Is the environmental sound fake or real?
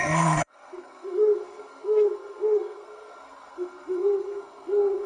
fake